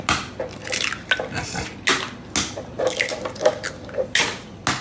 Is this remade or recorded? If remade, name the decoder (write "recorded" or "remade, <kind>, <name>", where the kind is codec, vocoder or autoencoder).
recorded